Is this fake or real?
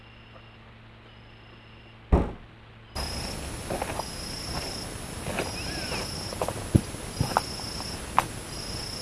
real